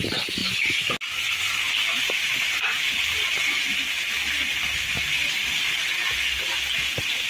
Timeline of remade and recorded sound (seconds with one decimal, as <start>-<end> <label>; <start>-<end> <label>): 0.0-7.3 recorded